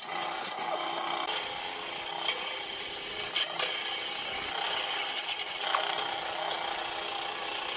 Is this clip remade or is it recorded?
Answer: recorded